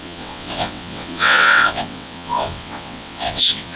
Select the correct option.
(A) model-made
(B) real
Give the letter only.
A